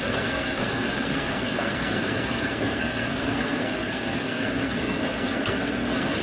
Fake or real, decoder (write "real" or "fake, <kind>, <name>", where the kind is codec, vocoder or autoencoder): fake, codec, SNAC